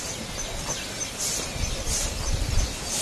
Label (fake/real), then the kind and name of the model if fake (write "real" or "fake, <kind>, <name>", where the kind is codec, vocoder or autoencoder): real